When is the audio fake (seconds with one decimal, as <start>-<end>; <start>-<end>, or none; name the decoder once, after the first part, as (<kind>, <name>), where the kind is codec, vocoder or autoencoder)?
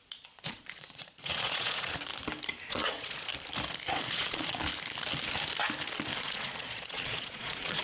0.0-2.1 (vocoder, Vocos); 2.7-3.3; 4.0-4.7; 6.2-7.8